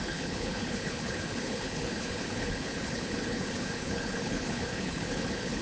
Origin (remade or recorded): remade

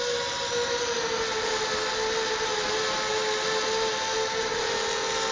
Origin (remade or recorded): recorded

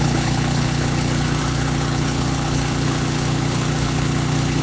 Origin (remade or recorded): remade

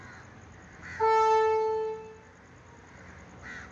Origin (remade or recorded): recorded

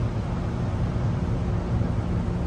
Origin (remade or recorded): recorded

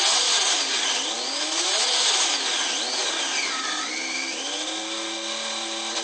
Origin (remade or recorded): recorded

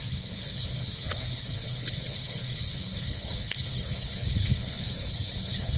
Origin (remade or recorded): remade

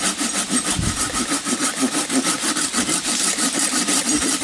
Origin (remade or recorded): recorded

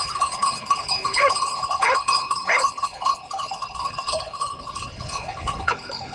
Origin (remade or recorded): remade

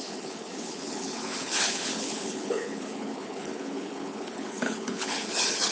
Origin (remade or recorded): remade